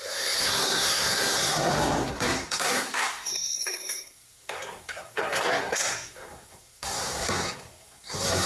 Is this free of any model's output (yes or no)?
no